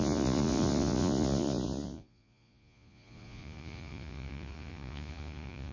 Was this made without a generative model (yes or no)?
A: no